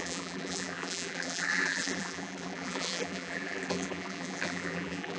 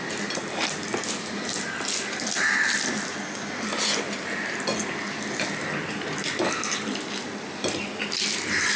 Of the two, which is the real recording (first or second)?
second